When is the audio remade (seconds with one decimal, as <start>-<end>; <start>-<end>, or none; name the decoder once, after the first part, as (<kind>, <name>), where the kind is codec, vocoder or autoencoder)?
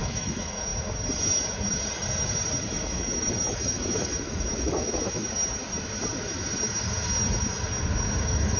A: 0.0-0.7 (autoencoder, DAC-VAE); 2.7-5.2; 8.2-8.6